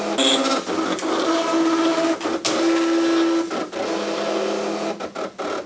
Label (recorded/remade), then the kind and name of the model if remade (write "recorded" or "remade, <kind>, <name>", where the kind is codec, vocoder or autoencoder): recorded